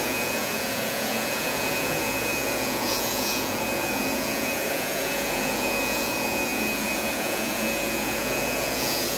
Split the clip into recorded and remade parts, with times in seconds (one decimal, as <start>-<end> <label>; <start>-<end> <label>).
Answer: 0.0-9.2 remade